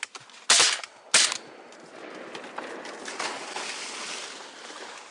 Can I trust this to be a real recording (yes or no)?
yes